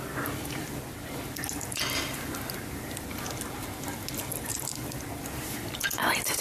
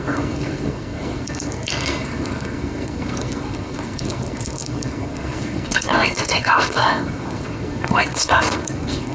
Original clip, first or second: first